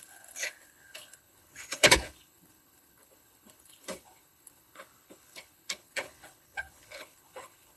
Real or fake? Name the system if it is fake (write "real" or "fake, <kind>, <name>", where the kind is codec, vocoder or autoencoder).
fake, codec, HILCodec